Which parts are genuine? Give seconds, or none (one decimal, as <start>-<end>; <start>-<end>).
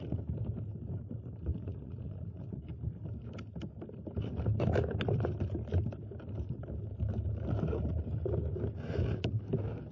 0.0-1.5; 2.6-9.9